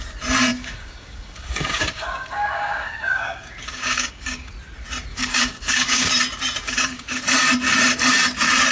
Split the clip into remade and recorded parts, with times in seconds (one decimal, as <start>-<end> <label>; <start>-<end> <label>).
0.0-0.5 recorded; 0.5-4.5 remade; 4.5-5.1 recorded; 5.1-6.1 remade; 6.1-6.6 recorded; 6.6-7.2 remade; 7.2-8.7 recorded